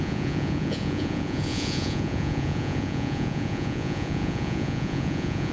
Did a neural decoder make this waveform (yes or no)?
yes